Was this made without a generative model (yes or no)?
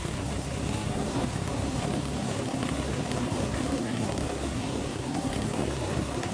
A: no